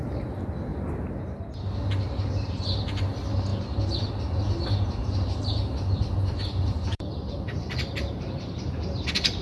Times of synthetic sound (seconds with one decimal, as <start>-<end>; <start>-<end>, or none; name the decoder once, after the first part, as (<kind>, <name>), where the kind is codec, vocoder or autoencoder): 5.0-9.4 (vocoder, BigVGAN v2)